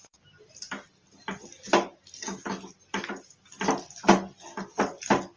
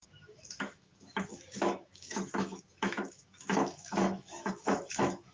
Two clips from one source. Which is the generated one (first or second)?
second